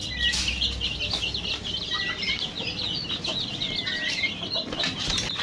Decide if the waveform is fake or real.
real